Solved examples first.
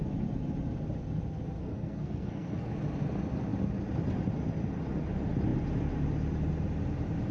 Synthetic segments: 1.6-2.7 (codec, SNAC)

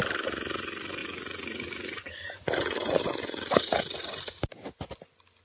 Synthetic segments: 1.0-3.8 (vocoder, Vocos)

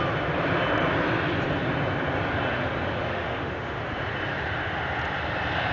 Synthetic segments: 3.1-3.8 (autoencoder, DAC-VAE)

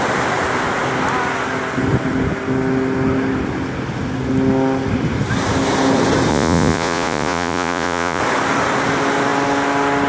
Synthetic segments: 6.3-8.2 (vocoder, Vocos)

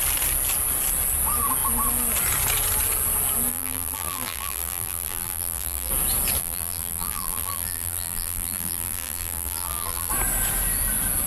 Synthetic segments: 3.5-5.9 (vocoder, BigVGAN v2); 6.4-10.1

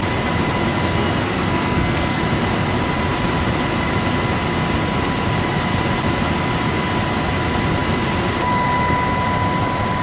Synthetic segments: 0.8-2.2 (codec, SNAC)

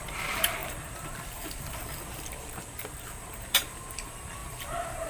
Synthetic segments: 0.0-5.1 (vocoder, BigVGAN v2)